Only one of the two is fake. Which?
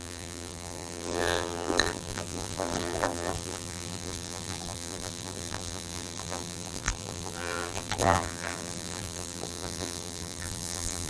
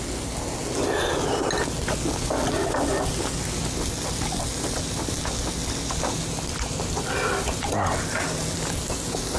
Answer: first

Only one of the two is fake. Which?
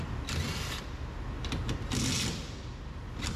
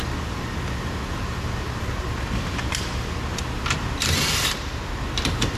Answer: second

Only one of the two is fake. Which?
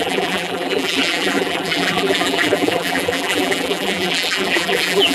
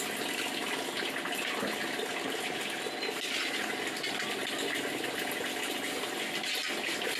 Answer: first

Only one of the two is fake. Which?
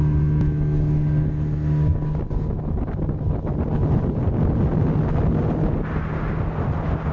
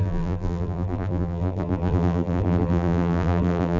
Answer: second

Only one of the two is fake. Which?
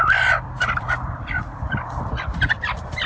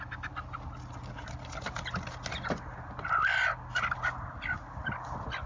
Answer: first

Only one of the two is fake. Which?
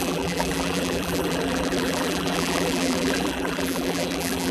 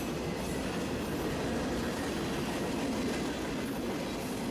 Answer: first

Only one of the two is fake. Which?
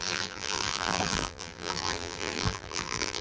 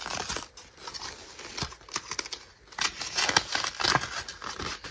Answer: first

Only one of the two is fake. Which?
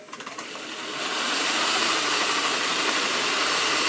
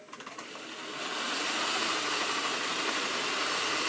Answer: first